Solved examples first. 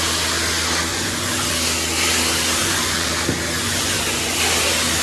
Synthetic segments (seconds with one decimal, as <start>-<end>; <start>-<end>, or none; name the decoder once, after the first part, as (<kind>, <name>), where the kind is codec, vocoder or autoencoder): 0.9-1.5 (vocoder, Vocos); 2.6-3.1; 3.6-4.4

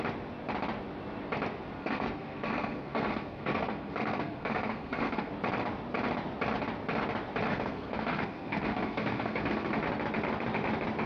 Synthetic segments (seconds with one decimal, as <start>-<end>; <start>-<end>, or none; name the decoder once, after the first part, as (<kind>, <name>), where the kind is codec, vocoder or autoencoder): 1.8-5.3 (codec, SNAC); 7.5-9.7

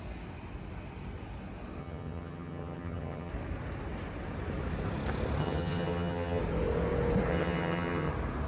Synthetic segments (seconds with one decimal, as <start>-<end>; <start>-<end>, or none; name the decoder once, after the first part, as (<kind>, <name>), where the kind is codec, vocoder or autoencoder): 1.8-3.3 (vocoder, HiFi-GAN); 5.4-6.4; 7.3-8.1